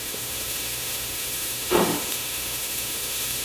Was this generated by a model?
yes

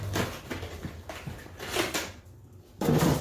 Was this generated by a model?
no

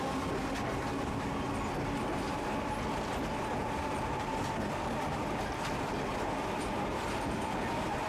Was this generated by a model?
no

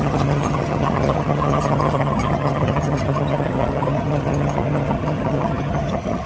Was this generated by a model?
yes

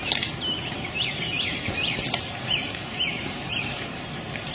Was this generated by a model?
yes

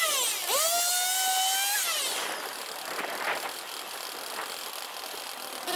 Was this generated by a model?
no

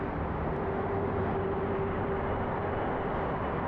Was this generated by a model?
no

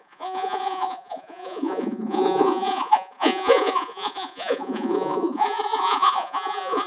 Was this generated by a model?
yes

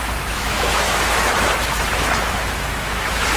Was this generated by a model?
yes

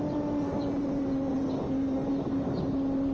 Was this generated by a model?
no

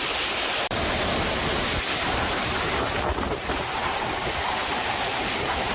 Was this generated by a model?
yes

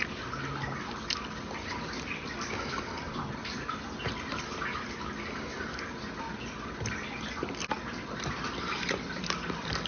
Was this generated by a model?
no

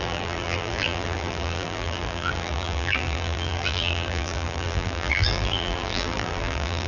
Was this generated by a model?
yes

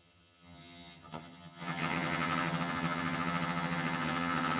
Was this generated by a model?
yes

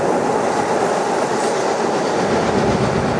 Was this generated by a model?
no